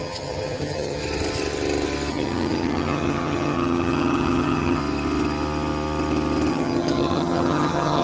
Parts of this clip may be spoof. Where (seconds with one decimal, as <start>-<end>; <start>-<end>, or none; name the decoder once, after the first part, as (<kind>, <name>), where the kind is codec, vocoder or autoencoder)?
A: 0.0-1.0 (vocoder, HiFi-GAN); 2.1-4.8; 6.5-8.0